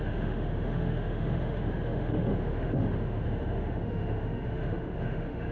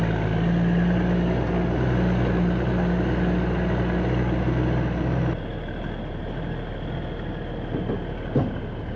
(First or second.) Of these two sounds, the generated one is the first